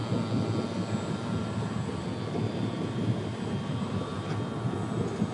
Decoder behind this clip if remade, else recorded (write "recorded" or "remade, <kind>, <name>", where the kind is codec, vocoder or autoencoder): recorded